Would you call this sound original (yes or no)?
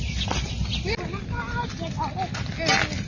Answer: yes